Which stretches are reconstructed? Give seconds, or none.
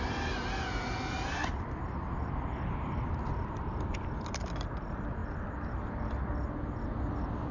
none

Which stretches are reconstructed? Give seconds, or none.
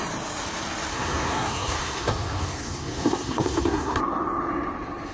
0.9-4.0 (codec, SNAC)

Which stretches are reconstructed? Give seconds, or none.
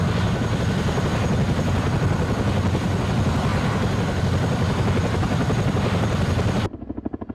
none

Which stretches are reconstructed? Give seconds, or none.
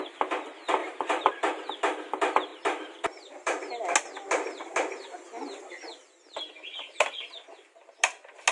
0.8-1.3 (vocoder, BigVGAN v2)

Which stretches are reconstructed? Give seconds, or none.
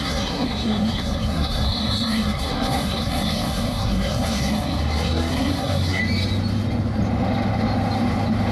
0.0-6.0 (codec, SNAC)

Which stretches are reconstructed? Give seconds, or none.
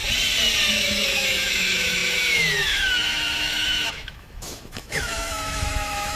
0.7-6.2 (autoencoder, DAC-VAE)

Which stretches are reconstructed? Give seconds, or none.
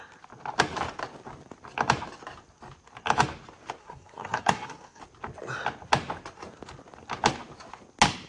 3.8-5.0 (codec, SNAC)